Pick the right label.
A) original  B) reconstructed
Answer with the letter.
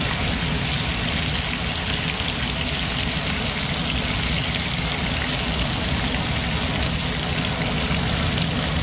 A